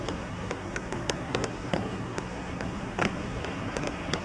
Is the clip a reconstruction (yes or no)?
yes